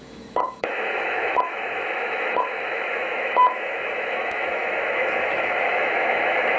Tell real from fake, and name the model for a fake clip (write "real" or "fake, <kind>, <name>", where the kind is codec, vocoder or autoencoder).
fake, autoencoder, DAC-VAE